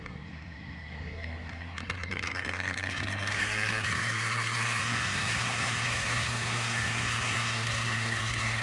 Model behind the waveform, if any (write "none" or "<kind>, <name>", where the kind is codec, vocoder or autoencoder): codec, SNAC